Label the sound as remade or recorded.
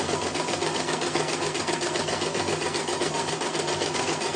remade